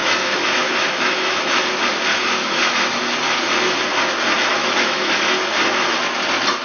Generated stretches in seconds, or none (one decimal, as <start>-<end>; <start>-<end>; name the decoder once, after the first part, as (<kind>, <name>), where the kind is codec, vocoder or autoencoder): 0.0-1.6 (autoencoder, DAC-VAE); 2.1-3.0; 4.5-6.0